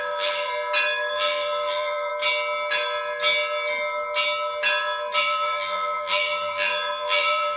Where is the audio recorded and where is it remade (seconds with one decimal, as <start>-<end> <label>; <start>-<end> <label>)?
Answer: 0.0-0.5 remade; 0.5-1.1 recorded; 1.1-2.1 remade; 2.1-5.2 recorded; 5.2-7.6 remade